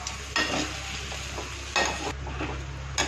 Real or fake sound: real